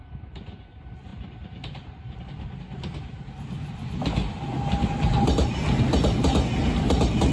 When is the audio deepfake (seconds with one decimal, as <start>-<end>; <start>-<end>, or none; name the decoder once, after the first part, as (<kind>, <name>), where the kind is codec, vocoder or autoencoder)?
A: 1.1-2.2 (vocoder, BigVGAN v2)